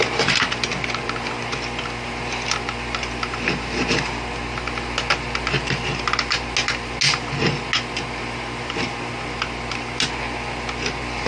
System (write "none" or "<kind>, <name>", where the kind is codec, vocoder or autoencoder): none